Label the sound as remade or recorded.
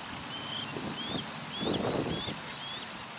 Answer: recorded